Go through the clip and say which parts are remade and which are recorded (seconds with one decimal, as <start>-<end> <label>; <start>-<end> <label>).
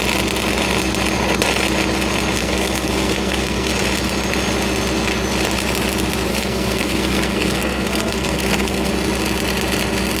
0.0-2.4 recorded; 2.4-3.7 remade; 3.7-6.3 recorded; 6.3-8.9 remade; 8.9-10.2 recorded